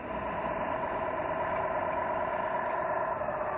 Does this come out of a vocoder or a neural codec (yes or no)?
no